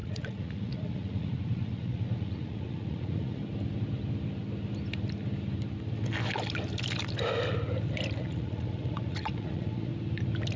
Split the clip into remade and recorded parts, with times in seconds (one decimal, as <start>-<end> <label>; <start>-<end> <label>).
0.0-3.4 remade; 3.4-8.2 recorded; 8.2-9.9 remade; 9.9-10.6 recorded